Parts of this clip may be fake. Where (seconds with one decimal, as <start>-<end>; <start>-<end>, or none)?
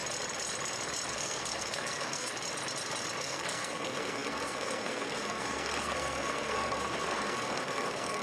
1.1-2.3; 3.2-8.2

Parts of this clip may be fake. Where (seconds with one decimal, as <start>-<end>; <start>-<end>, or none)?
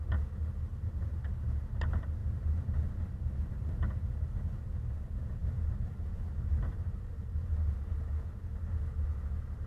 0.7-1.3; 5.4-7.5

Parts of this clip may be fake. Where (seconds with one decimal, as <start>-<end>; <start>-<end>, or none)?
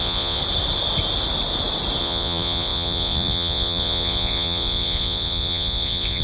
0.0-0.4; 2.0-6.2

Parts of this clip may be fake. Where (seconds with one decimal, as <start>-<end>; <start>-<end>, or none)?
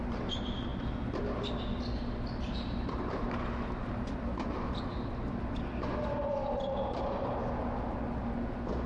none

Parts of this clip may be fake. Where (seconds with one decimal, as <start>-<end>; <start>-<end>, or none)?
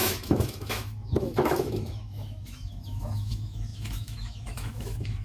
0.0-5.2